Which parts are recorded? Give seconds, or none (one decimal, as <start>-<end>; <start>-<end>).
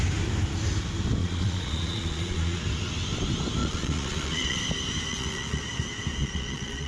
0.0-1.2; 2.6-3.6; 4.6-5.1; 5.6-6.2